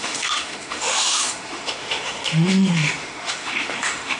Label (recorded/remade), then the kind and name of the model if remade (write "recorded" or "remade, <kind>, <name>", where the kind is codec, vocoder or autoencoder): remade, autoencoder, DAC-VAE